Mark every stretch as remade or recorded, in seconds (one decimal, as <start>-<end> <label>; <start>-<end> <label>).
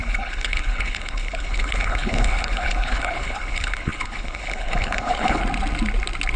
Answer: 0.0-5.4 remade; 5.4-6.4 recorded